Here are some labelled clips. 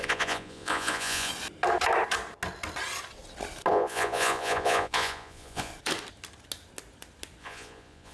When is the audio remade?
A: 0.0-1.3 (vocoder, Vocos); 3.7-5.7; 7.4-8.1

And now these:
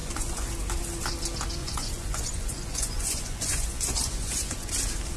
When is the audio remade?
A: 0.0-0.5 (vocoder, Vocos); 1.6-4.7

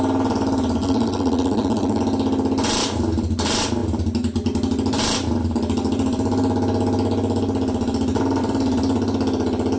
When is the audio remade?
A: 0.8-2.0 (vocoder, Vocos)

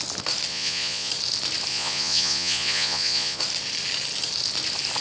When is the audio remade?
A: 0.5-1.1 (vocoder, Vocos); 1.7-3.4

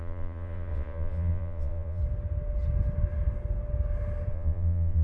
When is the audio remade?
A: 0.0-2.0 (vocoder, Vocos); 4.3-5.0